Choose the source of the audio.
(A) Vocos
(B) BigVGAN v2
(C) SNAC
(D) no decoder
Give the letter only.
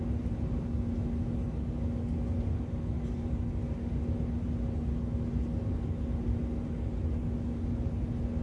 D